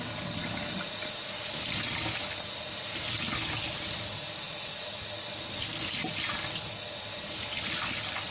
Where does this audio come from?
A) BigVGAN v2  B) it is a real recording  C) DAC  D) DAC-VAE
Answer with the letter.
B